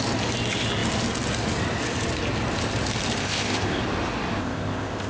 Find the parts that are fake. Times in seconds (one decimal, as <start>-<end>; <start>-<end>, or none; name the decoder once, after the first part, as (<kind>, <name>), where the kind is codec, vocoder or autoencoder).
3.2-3.8 (codec, ZipCodec); 4.4-5.1